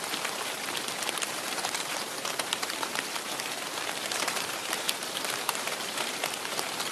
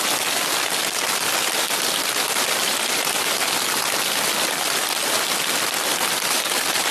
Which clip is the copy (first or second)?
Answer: first